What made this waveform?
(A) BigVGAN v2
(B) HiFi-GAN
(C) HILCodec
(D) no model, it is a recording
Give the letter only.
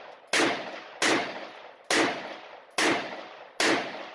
D